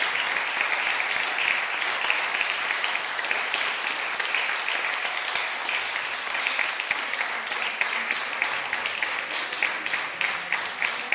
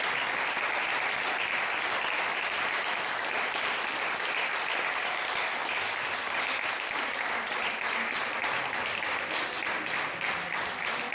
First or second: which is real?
first